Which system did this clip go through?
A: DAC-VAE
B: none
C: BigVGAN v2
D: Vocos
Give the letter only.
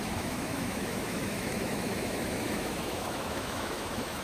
A